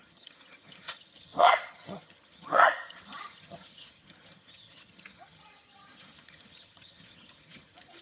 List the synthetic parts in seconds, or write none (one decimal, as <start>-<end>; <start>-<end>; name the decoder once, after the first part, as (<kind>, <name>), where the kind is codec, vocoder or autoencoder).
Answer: 0.0-8.0 (vocoder, HiFi-GAN)